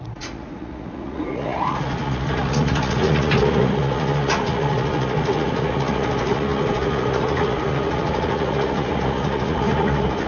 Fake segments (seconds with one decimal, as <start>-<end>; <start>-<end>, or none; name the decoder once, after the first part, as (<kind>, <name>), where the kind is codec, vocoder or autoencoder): 0.0-10.3 (vocoder, Vocos)

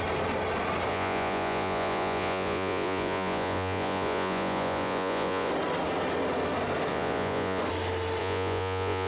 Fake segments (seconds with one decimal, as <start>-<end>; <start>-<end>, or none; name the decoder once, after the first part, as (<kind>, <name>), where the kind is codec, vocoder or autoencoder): 0.9-5.5 (vocoder, Vocos); 6.9-7.6; 8.2-9.1